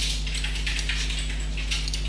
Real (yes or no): yes